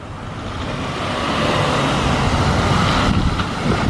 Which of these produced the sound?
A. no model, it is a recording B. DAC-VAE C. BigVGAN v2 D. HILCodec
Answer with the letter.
A